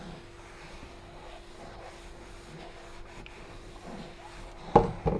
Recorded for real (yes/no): yes